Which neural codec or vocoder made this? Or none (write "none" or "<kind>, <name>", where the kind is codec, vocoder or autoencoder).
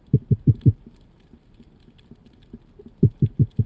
none